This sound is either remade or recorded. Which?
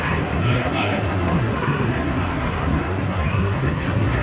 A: remade